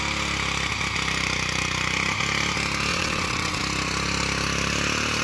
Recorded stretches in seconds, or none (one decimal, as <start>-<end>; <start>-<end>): 0.0-2.9; 3.6-5.2